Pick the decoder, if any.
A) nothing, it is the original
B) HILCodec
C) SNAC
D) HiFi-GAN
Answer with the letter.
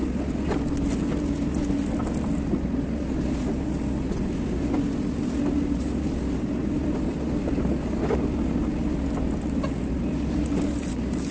A